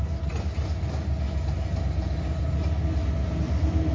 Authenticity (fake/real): real